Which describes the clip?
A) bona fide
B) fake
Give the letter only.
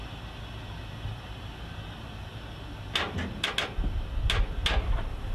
A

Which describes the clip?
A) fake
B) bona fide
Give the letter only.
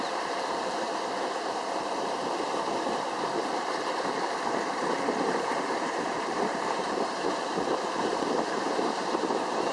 A